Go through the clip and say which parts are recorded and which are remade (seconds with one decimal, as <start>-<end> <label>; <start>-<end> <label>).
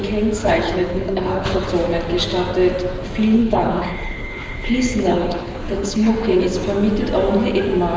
0.0-0.4 recorded; 0.4-1.7 remade; 1.7-3.4 recorded; 3.4-6.4 remade; 6.4-8.0 recorded